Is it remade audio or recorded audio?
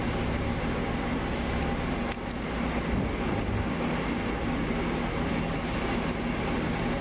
recorded